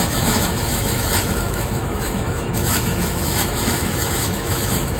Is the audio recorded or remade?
remade